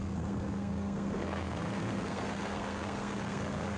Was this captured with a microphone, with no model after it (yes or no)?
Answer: no